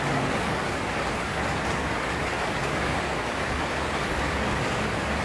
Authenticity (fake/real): fake